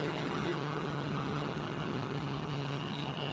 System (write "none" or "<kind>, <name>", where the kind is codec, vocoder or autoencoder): vocoder, HiFi-GAN